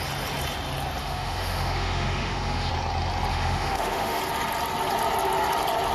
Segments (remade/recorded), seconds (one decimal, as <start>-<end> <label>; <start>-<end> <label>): 0.0-1.0 recorded; 1.0-2.7 remade; 2.7-3.3 recorded; 3.3-4.2 remade; 4.2-5.9 recorded